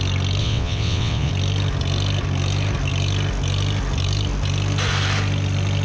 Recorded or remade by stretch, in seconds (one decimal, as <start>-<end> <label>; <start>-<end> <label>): 0.0-0.4 recorded; 0.4-1.3 remade; 1.3-5.8 recorded